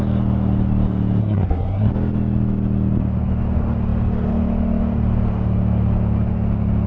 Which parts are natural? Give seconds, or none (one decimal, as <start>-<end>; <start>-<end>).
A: 0.0-1.2; 1.9-6.9